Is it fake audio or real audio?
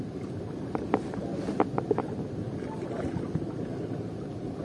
real